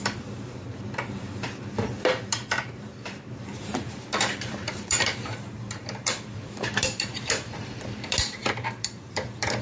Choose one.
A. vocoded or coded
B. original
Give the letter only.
A